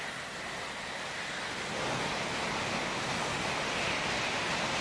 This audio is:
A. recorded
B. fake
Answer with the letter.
A